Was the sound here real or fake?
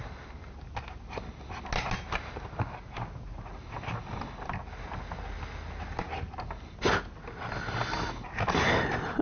real